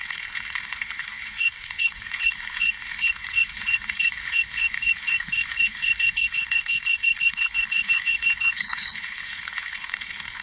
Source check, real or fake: fake